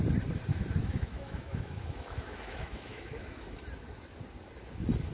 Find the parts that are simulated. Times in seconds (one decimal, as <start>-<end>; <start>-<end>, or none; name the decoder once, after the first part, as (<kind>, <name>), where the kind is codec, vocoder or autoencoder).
0.8-3.6 (autoencoder, DAC-VAE)